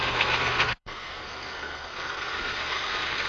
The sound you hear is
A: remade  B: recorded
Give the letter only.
A